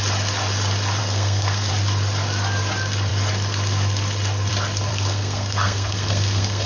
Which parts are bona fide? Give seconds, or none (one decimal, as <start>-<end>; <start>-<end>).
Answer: 0.0-1.0; 1.7-4.9